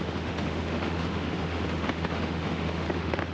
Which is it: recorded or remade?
remade